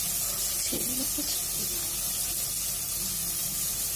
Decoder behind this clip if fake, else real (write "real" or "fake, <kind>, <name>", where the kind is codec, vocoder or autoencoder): real